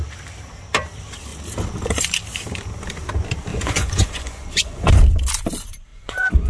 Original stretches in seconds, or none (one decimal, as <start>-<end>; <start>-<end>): 0.0-3.5; 4.8-5.9